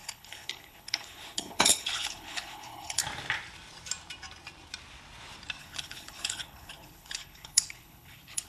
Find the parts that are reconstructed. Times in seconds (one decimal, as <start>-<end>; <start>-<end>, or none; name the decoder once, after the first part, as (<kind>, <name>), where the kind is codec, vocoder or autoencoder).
0.0-3.0 (codec, HILCodec); 5.6-8.5